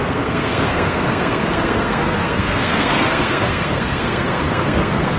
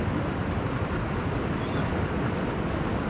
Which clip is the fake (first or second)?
first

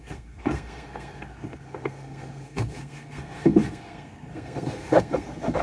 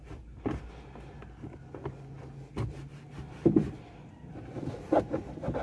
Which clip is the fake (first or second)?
first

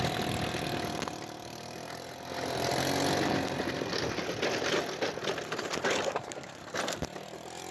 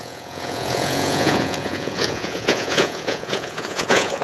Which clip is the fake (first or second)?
second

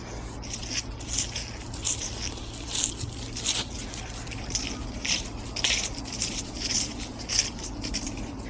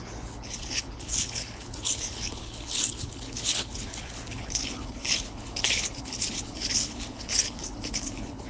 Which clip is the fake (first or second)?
second